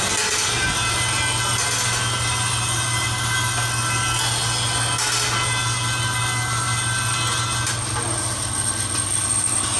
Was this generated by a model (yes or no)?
no